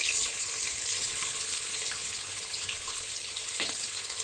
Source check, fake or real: fake